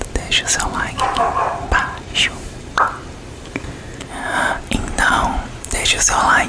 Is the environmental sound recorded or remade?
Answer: remade